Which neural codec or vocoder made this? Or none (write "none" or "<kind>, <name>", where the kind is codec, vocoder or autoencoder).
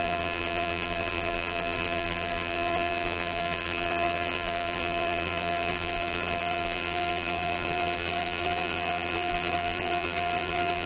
vocoder, BigVGAN v2